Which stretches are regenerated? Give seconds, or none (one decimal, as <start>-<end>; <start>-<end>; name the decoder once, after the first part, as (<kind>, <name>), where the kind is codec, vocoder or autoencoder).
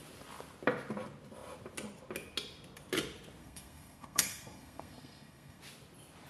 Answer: 3.4-5.6 (codec, SNAC)